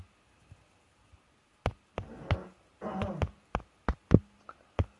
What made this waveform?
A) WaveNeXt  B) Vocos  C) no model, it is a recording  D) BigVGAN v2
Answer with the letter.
C